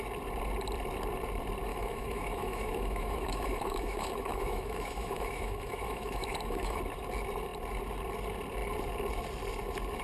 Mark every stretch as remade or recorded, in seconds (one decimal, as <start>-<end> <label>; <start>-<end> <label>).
0.0-1.7 recorded; 1.7-6.8 remade; 6.8-10.0 recorded

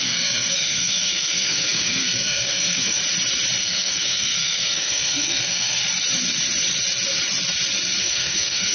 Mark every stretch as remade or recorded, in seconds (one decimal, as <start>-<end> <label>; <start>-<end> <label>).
0.0-3.0 remade; 3.0-3.6 recorded; 3.6-5.8 remade; 5.8-8.0 recorded; 8.0-8.7 remade